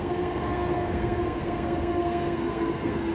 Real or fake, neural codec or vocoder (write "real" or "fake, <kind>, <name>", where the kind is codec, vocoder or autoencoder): fake, codec, SNAC